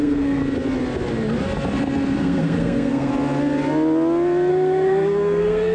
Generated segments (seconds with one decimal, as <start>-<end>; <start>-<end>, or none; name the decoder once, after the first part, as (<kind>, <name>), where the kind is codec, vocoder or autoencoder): 0.0-0.4 (codec, SNAC); 2.2-3.1; 4.5-5.7